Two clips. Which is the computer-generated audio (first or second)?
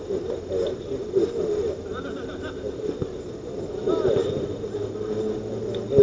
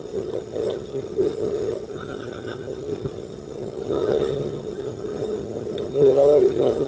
second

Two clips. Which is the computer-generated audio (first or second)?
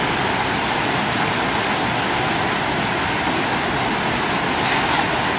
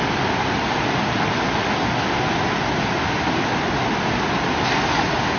first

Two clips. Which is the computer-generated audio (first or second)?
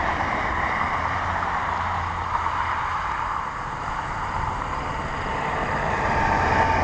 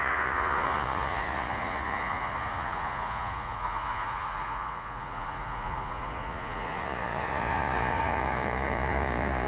second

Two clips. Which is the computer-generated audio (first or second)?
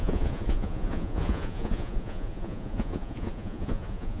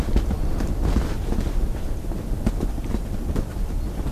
first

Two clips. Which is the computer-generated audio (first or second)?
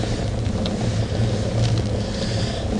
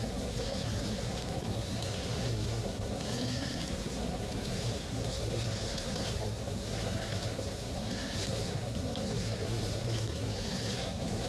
second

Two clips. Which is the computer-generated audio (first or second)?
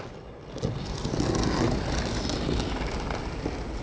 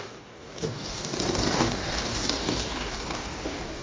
second